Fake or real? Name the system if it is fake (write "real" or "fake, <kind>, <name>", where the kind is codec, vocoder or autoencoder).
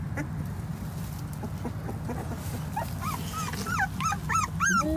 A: real